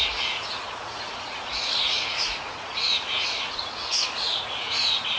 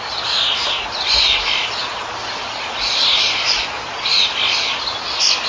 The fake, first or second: first